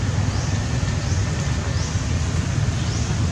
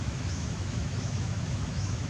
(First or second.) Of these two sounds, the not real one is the second